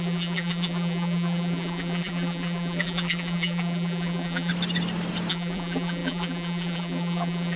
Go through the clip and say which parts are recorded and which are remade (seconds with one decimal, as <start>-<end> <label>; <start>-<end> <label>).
0.0-4.5 remade; 4.5-5.3 recorded; 5.3-7.6 remade